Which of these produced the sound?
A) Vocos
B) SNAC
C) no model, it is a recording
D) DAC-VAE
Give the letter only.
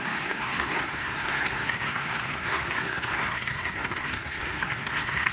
B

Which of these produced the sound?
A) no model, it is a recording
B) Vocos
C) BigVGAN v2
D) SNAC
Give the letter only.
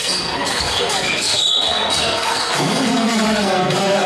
D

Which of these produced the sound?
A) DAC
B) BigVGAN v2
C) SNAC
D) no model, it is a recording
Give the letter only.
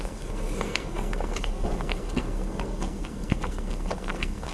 C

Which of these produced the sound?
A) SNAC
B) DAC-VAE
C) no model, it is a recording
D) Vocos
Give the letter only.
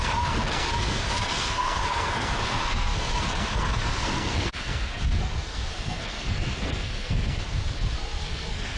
A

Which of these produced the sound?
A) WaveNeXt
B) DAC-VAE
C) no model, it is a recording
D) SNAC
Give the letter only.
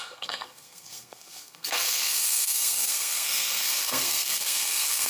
D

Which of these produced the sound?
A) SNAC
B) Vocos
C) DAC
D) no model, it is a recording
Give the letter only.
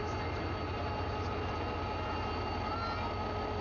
D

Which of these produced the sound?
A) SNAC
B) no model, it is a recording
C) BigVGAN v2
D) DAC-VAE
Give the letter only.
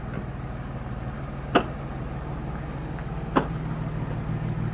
B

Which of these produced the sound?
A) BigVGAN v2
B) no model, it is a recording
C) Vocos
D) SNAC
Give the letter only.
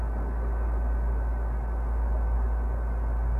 B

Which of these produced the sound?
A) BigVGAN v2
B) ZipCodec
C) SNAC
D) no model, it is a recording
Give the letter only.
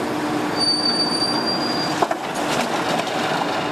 D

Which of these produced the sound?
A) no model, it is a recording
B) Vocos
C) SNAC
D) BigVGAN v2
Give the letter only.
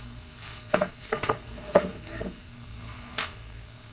C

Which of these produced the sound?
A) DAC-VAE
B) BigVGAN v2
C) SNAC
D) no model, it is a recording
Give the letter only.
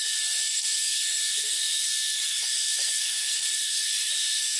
C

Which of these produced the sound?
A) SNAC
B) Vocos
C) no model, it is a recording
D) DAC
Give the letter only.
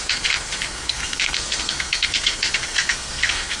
A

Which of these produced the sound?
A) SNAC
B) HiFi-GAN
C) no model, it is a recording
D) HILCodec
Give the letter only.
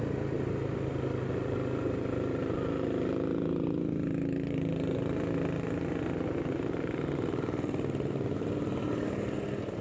C